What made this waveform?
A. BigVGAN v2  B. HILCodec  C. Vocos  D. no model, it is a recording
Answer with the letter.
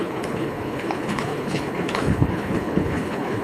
B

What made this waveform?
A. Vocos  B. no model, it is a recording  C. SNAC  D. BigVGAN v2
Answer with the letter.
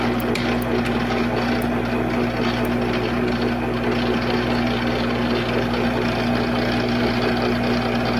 B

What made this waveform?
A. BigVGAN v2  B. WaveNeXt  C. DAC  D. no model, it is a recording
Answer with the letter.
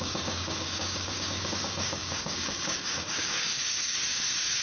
C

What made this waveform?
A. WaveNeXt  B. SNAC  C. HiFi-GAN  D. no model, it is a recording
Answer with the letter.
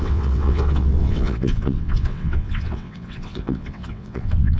A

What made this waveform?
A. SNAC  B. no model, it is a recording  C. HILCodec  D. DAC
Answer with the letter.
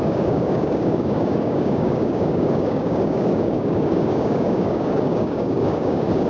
D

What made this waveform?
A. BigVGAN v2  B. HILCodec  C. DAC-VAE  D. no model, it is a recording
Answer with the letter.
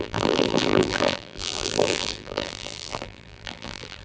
A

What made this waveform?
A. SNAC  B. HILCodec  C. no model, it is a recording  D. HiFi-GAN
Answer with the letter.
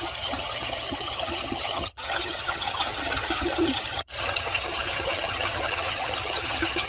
D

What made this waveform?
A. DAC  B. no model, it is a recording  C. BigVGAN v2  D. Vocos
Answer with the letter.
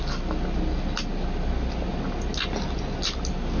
B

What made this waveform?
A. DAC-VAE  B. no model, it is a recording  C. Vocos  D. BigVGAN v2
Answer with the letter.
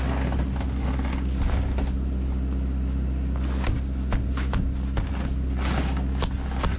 B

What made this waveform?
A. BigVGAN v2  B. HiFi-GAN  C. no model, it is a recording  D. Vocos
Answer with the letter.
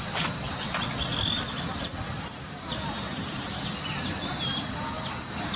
C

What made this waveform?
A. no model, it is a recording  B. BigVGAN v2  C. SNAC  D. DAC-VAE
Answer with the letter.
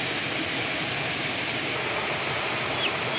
A